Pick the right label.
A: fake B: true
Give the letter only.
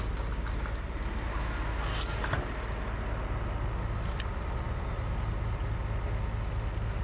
B